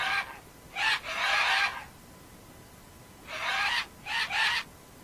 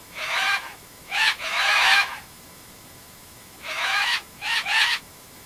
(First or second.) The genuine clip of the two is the first